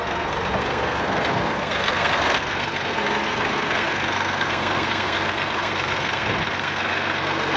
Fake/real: fake